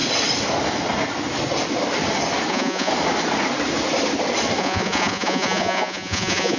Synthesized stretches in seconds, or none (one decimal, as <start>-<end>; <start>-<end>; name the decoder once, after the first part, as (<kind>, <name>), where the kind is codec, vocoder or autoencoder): 2.5-2.9 (vocoder, Vocos); 4.6-6.6